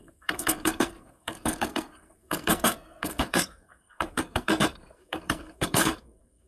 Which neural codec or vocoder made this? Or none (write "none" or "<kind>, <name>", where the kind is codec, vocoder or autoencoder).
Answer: codec, SNAC